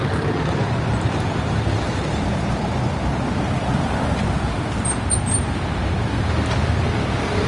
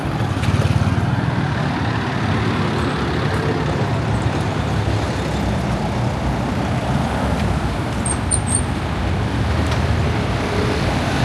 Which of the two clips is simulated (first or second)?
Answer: first